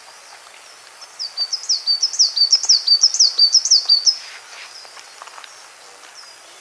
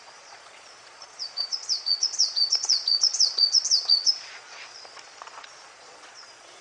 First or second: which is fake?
second